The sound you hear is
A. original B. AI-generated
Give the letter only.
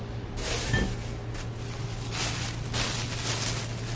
A